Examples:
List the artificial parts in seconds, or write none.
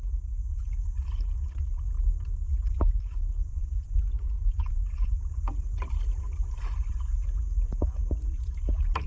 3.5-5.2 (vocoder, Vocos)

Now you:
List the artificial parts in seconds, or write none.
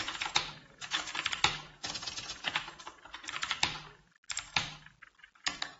0.0-1.1 (vocoder, Vocos); 1.6-3.2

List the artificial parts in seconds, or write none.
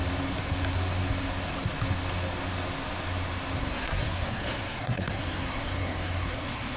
3.6-6.8 (codec, SNAC)